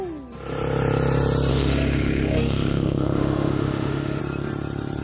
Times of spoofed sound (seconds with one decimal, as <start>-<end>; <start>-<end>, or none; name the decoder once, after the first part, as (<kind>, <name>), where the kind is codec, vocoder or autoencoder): 1.5-4.2 (autoencoder, DAC-VAE)

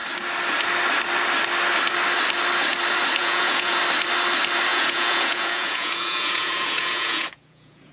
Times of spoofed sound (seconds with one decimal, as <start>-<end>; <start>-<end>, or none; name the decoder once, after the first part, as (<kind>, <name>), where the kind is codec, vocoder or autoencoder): 3.2-3.8 (vocoder, Vocos); 4.7-7.9